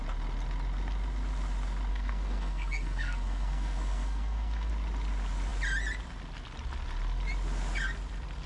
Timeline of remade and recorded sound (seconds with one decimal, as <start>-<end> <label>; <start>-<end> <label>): 0.0-1.9 recorded; 1.9-4.7 remade; 4.7-8.5 recorded